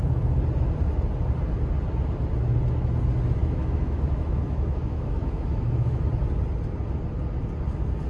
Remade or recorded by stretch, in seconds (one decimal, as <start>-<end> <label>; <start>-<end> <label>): 0.0-3.4 recorded; 3.4-6.0 remade; 6.0-8.1 recorded